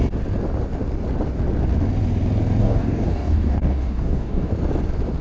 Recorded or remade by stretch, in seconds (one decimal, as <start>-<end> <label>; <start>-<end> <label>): 0.0-2.6 recorded; 2.6-4.5 remade; 4.5-5.2 recorded